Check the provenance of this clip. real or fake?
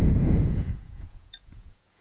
fake